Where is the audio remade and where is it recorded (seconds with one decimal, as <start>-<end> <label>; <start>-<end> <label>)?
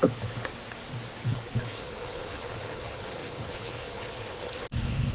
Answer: 0.0-0.5 remade; 0.5-1.2 recorded; 1.2-5.1 remade